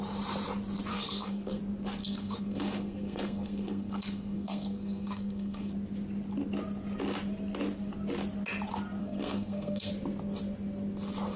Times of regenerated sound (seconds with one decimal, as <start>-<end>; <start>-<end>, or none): 0.9-1.6; 2.0-5.7; 9.0-9.9